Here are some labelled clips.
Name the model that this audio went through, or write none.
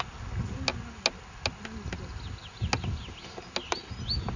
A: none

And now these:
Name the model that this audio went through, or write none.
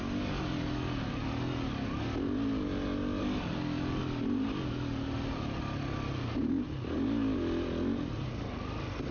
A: none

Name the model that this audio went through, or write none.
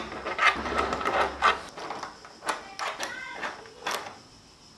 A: none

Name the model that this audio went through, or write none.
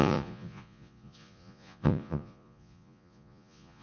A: vocoder, Vocos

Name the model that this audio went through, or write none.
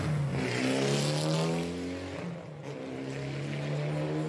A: none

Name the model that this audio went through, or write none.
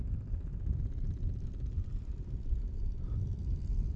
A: none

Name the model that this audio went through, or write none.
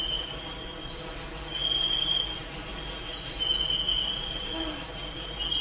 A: none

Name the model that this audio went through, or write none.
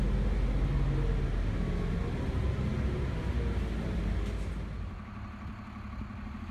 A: none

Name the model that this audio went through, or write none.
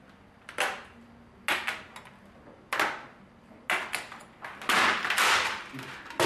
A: none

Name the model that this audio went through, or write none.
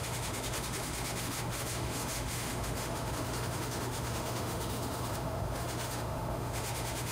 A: autoencoder, DAC-VAE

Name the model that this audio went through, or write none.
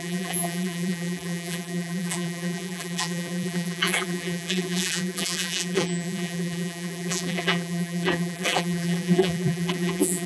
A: vocoder, BigVGAN v2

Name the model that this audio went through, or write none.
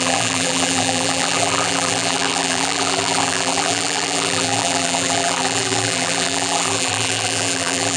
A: vocoder, BigVGAN v2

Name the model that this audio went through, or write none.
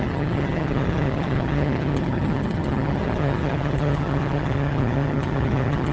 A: vocoder, HiFi-GAN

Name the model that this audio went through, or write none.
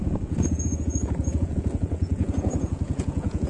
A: vocoder, Vocos